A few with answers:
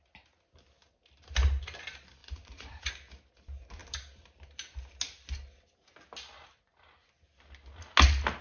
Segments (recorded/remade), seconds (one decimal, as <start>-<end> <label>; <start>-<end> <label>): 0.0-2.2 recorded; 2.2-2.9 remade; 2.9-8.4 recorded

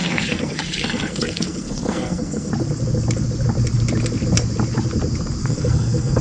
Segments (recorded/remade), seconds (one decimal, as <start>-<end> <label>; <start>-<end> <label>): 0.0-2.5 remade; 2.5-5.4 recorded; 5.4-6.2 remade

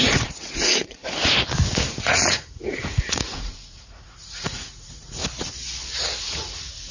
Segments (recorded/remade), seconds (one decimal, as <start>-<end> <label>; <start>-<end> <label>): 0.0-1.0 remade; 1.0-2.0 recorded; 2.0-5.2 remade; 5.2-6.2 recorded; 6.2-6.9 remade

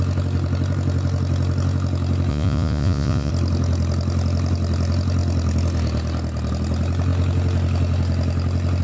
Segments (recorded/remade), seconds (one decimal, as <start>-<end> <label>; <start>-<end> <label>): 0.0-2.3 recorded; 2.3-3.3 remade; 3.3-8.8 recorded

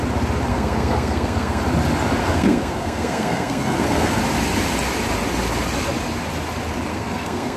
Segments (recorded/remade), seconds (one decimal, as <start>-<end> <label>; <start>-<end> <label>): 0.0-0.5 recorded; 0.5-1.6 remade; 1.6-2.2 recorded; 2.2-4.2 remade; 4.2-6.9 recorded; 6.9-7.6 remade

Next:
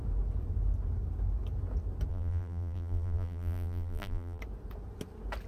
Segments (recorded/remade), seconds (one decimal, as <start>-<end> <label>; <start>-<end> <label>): 0.0-2.1 recorded; 2.1-4.4 remade; 4.4-5.5 recorded

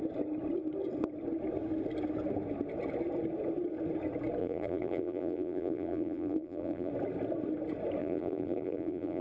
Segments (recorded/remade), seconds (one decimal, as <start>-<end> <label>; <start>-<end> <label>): 0.0-4.4 recorded; 4.4-6.9 remade; 6.9-8.0 recorded; 8.0-9.2 remade

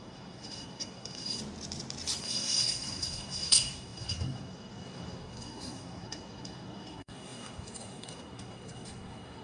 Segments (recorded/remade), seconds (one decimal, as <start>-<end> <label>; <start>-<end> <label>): 0.0-1.4 remade; 1.4-2.2 recorded; 2.2-9.4 remade